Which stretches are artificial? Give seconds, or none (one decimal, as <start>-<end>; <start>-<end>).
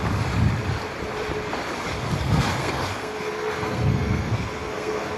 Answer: 2.2-5.2